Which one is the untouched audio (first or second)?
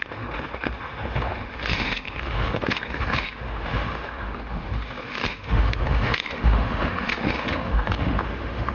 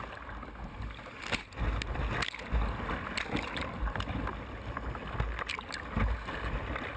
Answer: second